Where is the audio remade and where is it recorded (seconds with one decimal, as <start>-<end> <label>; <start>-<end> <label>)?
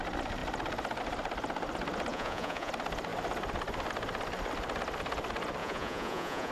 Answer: 0.0-2.1 recorded; 2.1-2.7 remade; 2.7-5.6 recorded; 5.6-6.5 remade